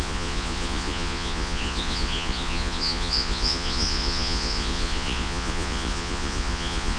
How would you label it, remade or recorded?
remade